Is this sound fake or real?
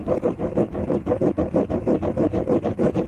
fake